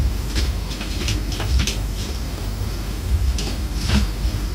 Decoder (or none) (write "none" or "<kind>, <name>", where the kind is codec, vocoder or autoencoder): codec, DAC